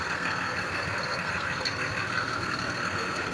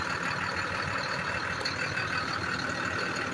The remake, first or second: first